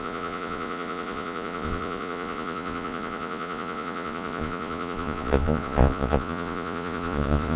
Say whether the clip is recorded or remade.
remade